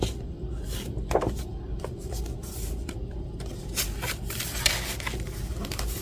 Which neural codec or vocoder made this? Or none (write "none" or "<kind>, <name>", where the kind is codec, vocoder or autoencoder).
none